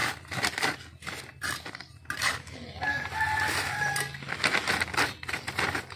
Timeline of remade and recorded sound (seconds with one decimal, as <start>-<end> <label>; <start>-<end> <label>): 0.0-6.0 recorded